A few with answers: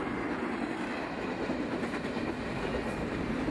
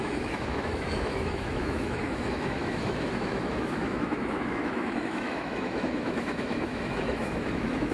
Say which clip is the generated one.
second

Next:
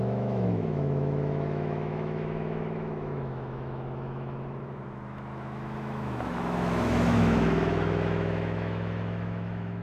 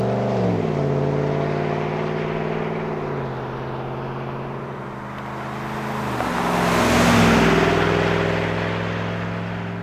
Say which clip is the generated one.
first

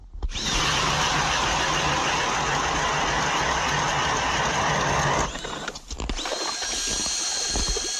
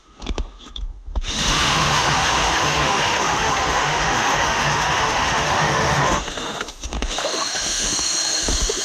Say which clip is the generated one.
second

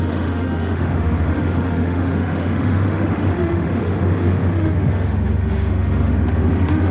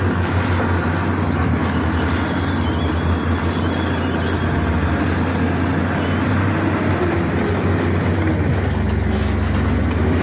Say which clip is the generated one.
first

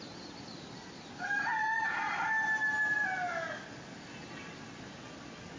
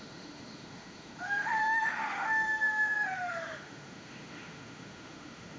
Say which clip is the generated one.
second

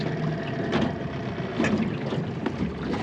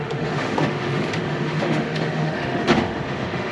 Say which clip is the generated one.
second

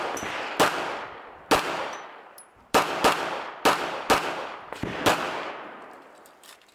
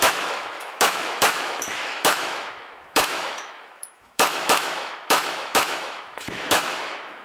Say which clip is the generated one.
second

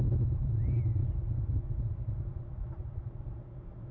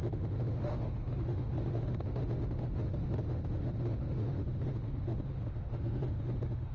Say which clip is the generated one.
second